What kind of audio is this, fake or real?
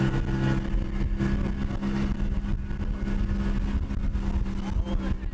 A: real